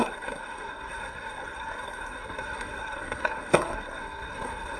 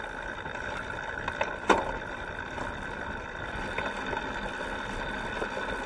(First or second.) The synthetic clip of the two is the first